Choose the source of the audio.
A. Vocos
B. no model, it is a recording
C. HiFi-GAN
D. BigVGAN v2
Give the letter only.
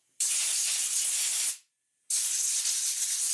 B